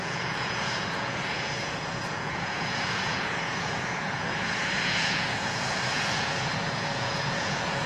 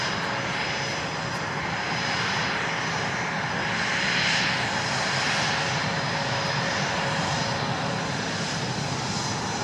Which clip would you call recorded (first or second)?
second